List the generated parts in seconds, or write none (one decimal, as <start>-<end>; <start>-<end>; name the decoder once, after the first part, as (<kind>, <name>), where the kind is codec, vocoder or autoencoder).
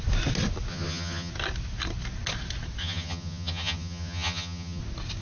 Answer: 0.7-1.3 (vocoder, HiFi-GAN); 2.8-4.8